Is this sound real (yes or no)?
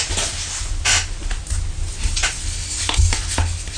yes